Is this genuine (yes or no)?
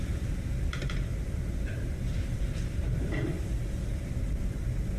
no